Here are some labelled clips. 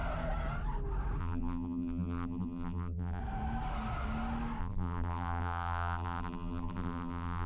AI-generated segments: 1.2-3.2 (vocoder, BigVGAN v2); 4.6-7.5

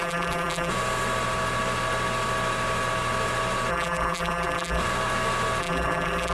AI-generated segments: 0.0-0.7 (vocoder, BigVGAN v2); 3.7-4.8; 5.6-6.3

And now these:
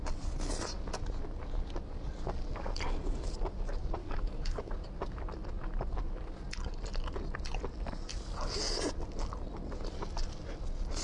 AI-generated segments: 4.0-4.7 (codec, DAC)

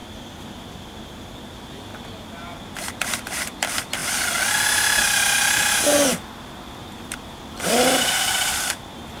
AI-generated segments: 1.5-1.9 (vocoder, BigVGAN v2); 2.9-4.0; 6.4-9.2

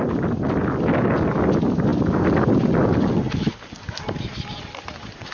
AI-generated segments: none